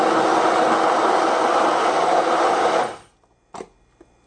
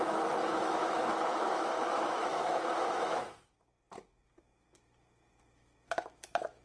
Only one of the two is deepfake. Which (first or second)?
second